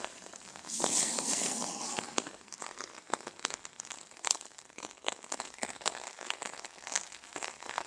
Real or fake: fake